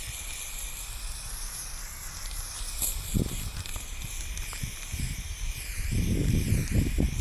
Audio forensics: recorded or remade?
recorded